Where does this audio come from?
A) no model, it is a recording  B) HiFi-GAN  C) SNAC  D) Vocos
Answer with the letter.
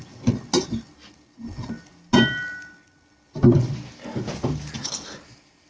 A